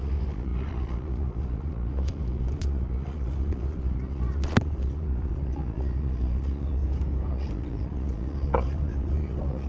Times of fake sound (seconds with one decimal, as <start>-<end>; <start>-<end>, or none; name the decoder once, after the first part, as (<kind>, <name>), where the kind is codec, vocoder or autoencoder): 0.0-6.8 (vocoder, Vocos); 7.3-9.7